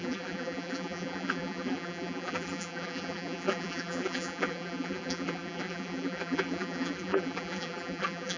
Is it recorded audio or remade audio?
remade